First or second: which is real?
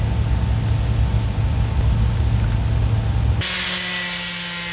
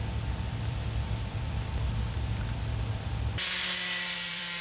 first